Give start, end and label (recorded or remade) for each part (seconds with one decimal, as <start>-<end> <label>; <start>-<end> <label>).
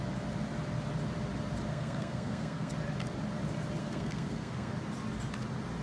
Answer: 0.0-1.7 recorded; 1.7-2.7 remade; 2.7-3.8 recorded; 3.8-4.7 remade; 4.7-5.8 recorded